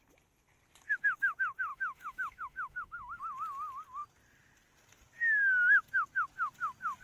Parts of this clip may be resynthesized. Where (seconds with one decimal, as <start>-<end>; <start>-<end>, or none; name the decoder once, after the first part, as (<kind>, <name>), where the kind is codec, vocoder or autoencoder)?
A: 1.7-3.2 (autoencoder, DAC-VAE)